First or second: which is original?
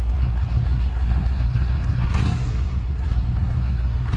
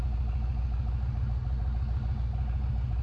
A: second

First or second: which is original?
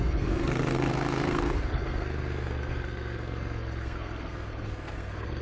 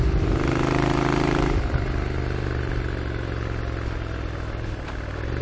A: second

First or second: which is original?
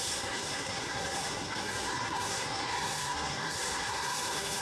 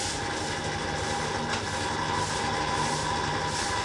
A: second